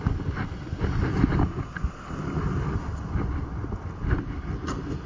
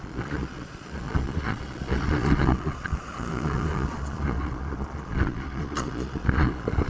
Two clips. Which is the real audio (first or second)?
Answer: first